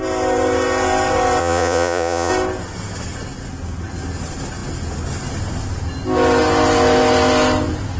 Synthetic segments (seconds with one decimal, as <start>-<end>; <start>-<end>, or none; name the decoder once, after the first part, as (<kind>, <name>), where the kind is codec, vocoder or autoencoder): 1.4-2.3 (vocoder, Vocos)

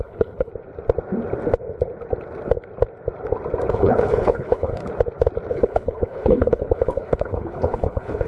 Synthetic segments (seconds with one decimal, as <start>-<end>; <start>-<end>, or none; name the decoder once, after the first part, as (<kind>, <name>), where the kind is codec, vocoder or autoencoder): 0.0-0.5 (codec, HILCodec); 3.7-4.8; 5.5-8.3

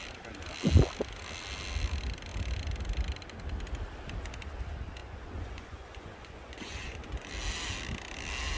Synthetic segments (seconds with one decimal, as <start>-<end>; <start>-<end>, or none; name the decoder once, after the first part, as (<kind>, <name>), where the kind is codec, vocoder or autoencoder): 5.0-7.3 (vocoder, Vocos)

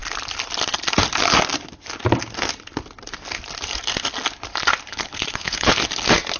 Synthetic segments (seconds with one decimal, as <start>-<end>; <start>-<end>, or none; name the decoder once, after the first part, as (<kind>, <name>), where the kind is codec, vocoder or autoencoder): 4.9-5.8 (codec, HILCodec)

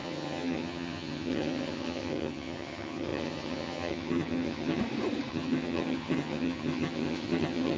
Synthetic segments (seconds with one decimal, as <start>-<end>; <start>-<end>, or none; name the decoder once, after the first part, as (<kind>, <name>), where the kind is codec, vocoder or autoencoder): 0.0-4.8 (vocoder, HiFi-GAN); 5.3-7.8

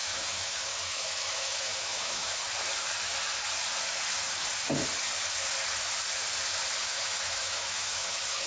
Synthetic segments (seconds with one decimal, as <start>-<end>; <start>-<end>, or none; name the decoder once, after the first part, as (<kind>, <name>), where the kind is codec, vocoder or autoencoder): 0.0-2.4 (autoencoder, DAC-VAE); 6.8-8.5

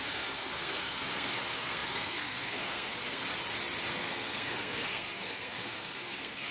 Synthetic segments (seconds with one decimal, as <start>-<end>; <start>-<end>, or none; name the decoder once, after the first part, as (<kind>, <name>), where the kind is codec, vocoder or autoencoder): 0.0-3.2 (codec, SNAC); 3.9-6.5

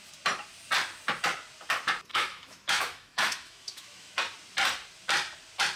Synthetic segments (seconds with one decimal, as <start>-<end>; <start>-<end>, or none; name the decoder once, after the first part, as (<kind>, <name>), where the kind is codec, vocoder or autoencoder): 2.1-4.1 (autoencoder, DAC-VAE)